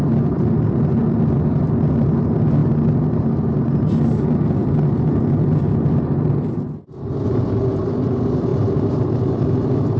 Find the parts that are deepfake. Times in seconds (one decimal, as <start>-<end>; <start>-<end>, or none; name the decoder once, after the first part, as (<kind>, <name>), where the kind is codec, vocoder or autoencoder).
none